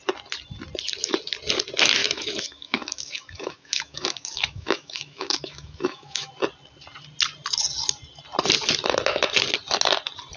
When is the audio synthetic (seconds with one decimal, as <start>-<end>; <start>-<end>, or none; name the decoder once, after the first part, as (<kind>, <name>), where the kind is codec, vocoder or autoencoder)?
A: 2.0-6.3 (autoencoder, DAC-VAE)